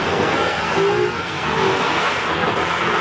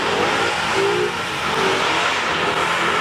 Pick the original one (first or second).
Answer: second